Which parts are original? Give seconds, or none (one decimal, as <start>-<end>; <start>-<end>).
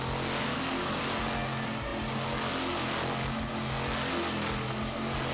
0.0-0.5; 1.0-5.3